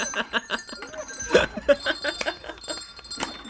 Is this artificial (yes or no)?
no